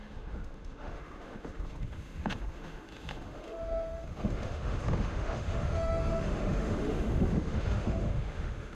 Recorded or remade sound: remade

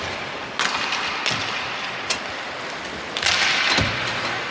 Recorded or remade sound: recorded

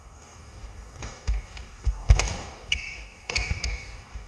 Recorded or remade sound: remade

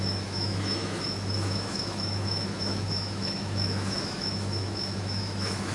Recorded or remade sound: remade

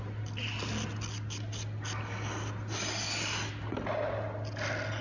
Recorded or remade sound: recorded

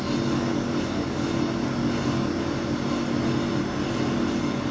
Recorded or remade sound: recorded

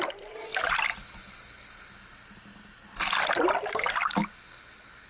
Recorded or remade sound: recorded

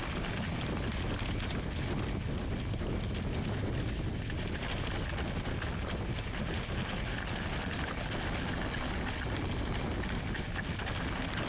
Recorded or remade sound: recorded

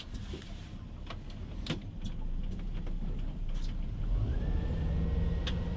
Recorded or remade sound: recorded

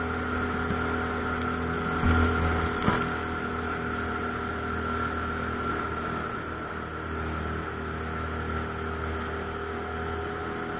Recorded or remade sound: recorded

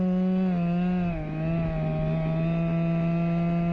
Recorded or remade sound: recorded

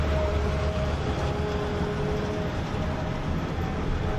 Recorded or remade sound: recorded